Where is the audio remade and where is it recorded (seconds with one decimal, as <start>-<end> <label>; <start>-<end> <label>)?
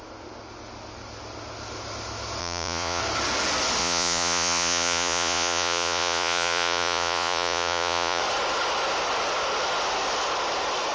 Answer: 0.0-2.4 recorded; 2.4-3.0 remade; 3.0-3.8 recorded; 3.8-8.2 remade; 8.2-10.9 recorded